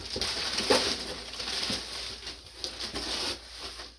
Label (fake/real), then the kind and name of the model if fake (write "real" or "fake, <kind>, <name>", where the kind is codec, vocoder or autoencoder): real